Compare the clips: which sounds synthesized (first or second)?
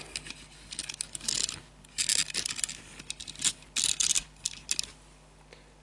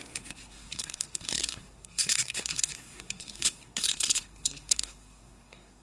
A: second